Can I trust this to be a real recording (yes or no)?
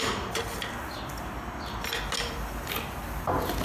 yes